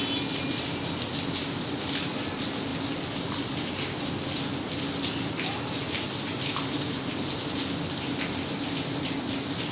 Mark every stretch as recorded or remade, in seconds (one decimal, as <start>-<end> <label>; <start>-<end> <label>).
0.0-9.7 recorded